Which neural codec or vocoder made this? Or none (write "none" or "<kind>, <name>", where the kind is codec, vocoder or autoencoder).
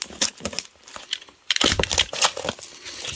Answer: none